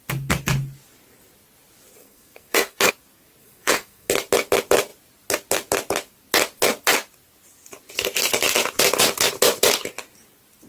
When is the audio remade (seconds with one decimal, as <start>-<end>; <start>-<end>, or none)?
2.0-2.9; 3.4-4.1